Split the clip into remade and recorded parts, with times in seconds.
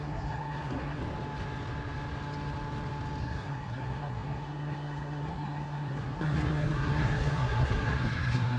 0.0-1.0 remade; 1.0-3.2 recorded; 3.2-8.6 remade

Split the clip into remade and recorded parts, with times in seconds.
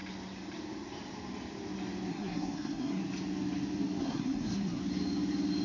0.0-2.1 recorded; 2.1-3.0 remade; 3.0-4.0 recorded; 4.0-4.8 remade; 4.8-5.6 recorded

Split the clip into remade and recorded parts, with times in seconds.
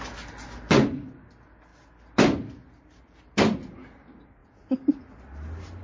0.0-5.8 recorded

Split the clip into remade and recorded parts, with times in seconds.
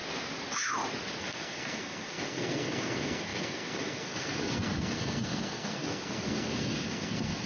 0.0-1.2 recorded; 1.2-7.5 remade